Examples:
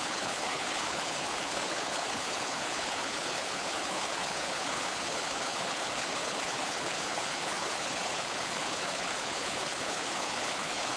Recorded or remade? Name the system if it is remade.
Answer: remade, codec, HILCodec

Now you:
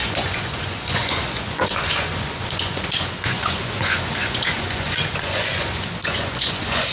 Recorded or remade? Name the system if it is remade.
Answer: remade, vocoder, Vocos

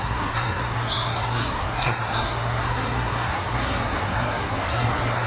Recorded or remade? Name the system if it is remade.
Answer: remade, codec, SNAC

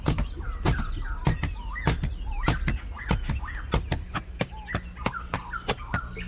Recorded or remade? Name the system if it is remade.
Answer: recorded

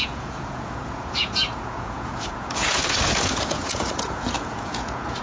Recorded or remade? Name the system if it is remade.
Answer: remade, vocoder, Vocos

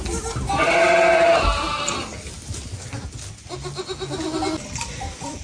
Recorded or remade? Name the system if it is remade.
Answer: recorded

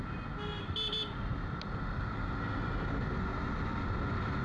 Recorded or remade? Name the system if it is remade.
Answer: recorded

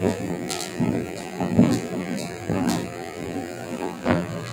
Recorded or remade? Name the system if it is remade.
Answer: remade, vocoder, BigVGAN v2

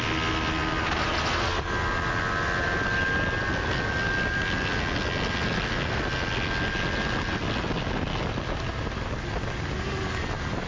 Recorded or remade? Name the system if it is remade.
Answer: recorded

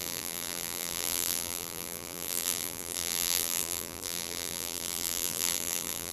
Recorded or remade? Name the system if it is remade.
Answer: remade, vocoder, BigVGAN v2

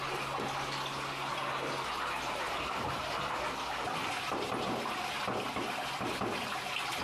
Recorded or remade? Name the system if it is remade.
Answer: recorded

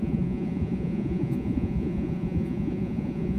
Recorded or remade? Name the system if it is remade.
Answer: remade, vocoder, Vocos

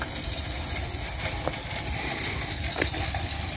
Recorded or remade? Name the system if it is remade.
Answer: remade, vocoder, BigVGAN v2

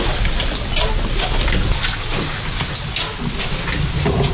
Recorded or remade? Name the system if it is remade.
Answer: recorded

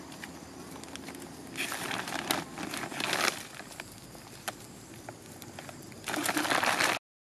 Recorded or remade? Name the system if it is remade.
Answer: recorded